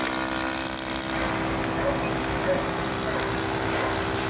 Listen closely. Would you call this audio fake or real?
real